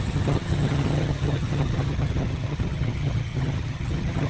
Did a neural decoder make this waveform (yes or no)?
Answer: yes